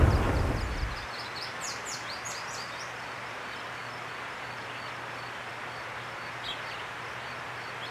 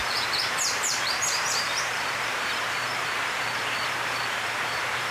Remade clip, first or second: second